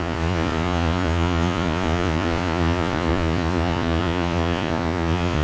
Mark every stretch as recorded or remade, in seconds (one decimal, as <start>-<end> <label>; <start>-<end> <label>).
0.0-5.4 remade